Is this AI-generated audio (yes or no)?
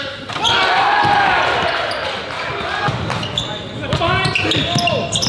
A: no